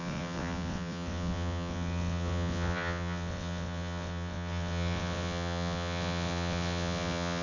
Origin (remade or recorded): remade